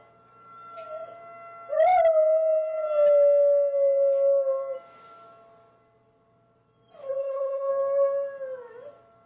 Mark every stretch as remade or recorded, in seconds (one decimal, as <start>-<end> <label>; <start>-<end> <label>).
0.0-7.2 recorded; 7.2-7.7 remade; 7.7-9.3 recorded